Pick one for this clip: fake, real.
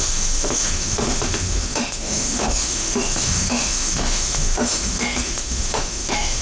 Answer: fake